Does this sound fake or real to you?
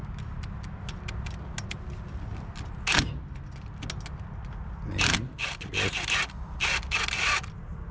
real